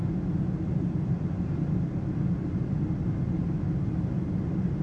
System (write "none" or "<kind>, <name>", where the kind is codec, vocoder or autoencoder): none